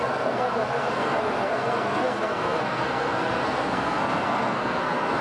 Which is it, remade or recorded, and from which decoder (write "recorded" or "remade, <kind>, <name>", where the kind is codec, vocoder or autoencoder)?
remade, codec, SNAC